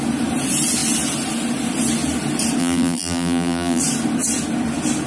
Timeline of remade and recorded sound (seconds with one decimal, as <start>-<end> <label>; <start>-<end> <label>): 0.0-2.6 recorded; 2.6-3.8 remade; 3.8-5.1 recorded